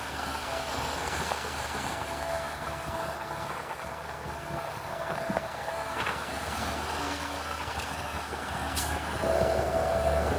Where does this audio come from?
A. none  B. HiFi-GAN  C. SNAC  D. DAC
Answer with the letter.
C